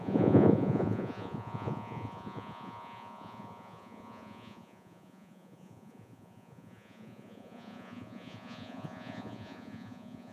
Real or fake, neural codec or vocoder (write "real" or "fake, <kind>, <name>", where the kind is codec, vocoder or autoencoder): fake, vocoder, Vocos